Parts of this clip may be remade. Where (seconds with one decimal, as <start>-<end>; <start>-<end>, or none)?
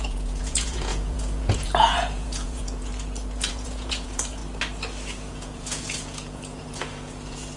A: 0.0-2.9; 3.5-4.4; 5.3-7.6